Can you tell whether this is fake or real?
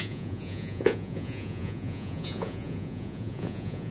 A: fake